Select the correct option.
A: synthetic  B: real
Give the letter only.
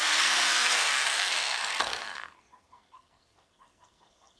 A